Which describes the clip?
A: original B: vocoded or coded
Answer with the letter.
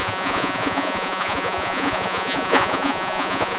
B